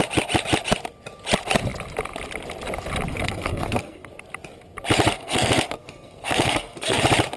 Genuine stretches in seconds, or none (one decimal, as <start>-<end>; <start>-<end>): 0.0-3.1; 4.1-5.1; 7.0-7.4